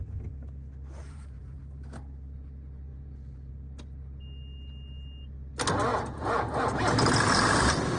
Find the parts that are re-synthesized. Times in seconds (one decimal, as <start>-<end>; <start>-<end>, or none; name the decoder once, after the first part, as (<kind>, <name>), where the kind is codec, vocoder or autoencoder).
1.0-1.6 (vocoder, Vocos); 2.9-3.5; 5.9-6.6